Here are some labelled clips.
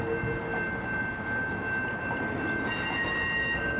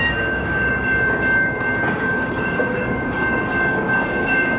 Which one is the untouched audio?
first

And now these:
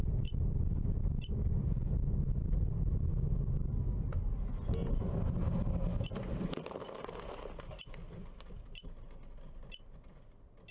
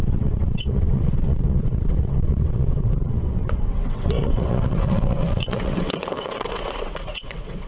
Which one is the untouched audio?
first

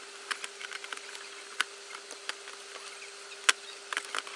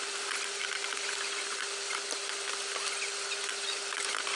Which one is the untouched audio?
first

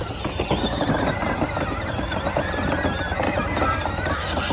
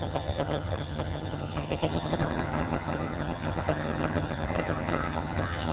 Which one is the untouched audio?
first